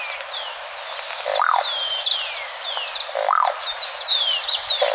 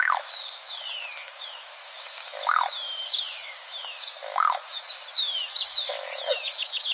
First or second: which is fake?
second